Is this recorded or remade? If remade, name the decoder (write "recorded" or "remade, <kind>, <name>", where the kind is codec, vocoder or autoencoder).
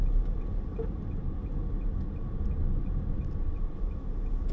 recorded